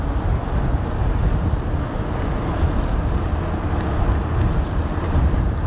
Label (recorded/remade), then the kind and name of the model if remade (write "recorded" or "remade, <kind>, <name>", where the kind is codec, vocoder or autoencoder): recorded